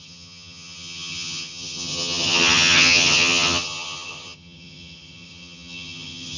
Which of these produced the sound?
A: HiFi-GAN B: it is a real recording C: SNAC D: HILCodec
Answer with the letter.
A